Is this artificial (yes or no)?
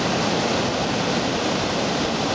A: no